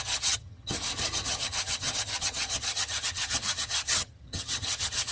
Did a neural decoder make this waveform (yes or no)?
yes